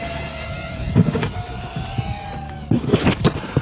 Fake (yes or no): no